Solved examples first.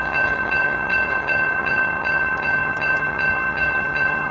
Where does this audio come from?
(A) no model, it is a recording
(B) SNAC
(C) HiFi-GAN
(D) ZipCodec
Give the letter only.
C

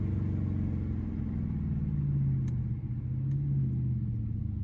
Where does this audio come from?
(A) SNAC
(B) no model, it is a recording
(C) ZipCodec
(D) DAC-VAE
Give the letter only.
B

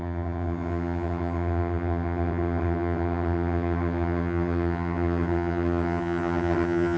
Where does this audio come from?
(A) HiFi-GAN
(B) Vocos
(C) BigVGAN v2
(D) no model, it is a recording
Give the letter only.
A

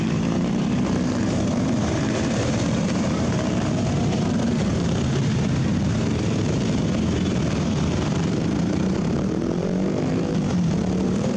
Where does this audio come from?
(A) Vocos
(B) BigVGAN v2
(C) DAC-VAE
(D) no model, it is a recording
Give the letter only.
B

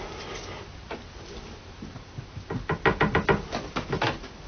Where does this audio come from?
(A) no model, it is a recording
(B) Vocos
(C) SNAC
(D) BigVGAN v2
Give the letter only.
A